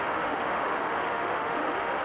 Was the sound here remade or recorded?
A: remade